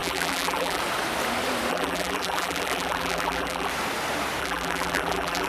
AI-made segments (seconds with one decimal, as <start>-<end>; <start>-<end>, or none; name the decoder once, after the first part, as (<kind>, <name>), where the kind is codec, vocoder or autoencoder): 0.0-0.8 (vocoder, BigVGAN v2); 1.7-3.7; 4.4-5.5